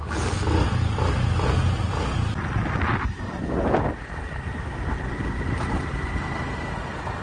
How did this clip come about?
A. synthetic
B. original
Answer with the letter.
B